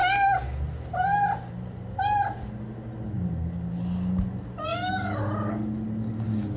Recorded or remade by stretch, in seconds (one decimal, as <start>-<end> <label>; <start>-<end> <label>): 0.0-4.7 recorded; 4.7-5.2 remade; 5.2-6.6 recorded

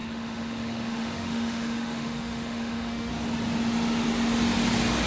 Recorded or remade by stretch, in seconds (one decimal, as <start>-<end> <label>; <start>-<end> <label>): 0.0-3.1 remade; 3.1-5.1 recorded

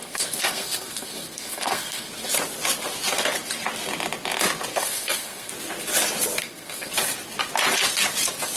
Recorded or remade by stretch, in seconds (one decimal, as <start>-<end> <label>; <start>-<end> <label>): 0.0-2.1 remade; 2.1-4.7 recorded; 4.7-5.5 remade; 5.5-6.4 recorded; 6.4-6.9 remade; 6.9-8.6 recorded

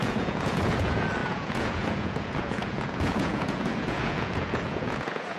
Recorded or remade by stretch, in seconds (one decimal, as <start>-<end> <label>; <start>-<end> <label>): 0.0-5.4 remade

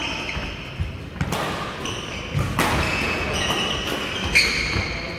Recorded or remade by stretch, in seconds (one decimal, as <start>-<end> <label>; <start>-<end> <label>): 0.0-2.9 recorded; 2.9-3.5 remade; 3.5-5.2 recorded

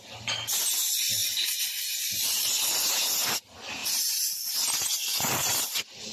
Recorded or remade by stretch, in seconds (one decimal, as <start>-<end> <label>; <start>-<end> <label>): 0.0-3.8 recorded; 3.8-4.4 remade; 4.4-6.1 recorded